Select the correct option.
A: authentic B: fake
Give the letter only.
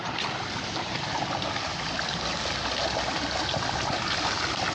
A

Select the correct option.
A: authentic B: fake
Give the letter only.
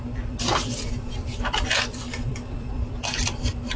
B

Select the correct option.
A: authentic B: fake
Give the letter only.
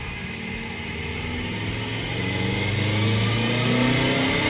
A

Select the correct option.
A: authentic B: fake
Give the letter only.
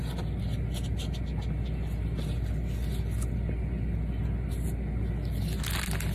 A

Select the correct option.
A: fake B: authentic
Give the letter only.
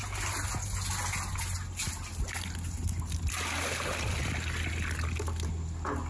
B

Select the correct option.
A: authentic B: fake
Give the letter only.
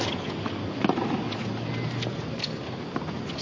A